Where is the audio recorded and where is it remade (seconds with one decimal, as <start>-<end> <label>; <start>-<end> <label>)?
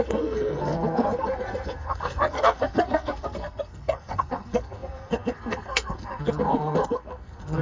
0.0-7.6 remade